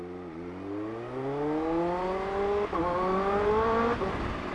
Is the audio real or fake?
real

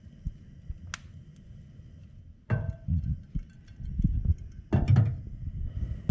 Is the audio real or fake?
real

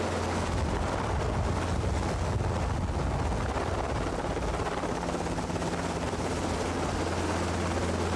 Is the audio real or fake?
real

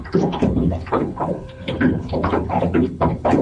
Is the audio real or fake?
fake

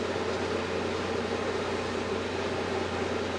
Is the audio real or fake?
real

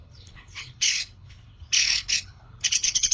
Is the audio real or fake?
fake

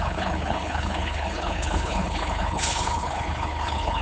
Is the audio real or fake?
fake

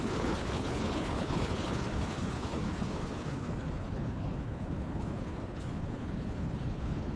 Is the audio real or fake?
fake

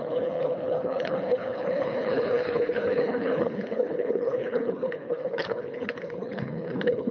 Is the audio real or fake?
fake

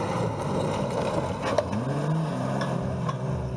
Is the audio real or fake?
real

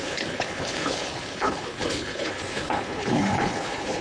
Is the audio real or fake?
fake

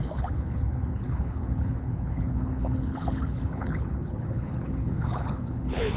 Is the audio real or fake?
fake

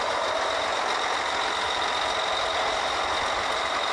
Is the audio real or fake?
real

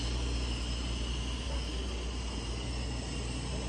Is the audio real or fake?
real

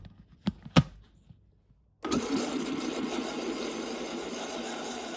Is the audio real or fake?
real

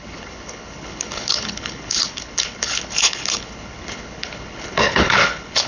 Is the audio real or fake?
fake